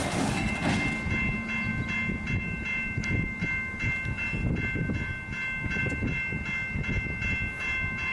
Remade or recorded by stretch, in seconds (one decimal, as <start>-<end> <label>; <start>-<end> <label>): 0.0-0.5 remade; 0.5-8.1 recorded